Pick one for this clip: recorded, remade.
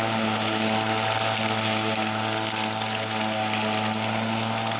recorded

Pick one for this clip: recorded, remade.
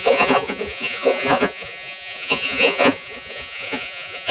remade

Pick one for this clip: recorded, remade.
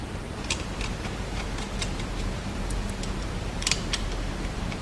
remade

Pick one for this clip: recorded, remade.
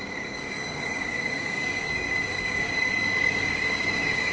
remade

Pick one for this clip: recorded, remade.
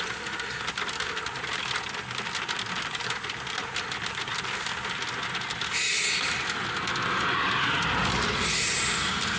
recorded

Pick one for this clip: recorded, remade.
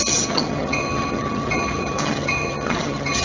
remade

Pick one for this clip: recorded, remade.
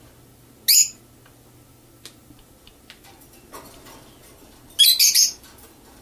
recorded